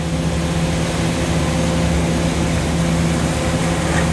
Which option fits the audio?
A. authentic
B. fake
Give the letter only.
A